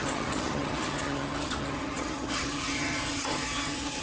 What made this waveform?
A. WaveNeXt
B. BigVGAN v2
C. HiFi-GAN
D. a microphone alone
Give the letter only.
C